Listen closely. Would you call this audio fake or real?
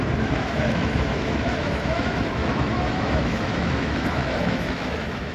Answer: fake